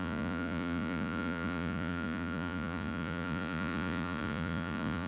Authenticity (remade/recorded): remade